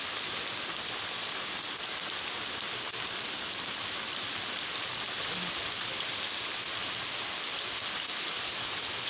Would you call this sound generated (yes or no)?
no